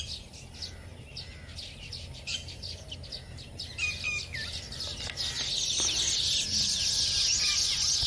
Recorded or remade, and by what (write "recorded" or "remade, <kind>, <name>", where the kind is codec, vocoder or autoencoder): recorded